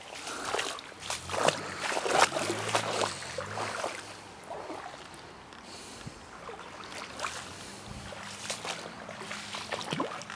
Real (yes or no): yes